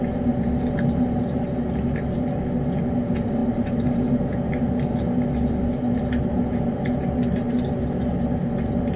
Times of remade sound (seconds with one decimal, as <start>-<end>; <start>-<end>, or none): none